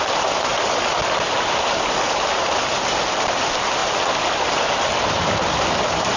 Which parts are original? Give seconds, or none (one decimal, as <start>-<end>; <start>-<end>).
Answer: 0.0-6.2